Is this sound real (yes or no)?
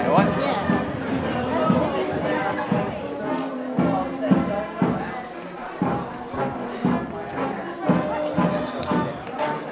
yes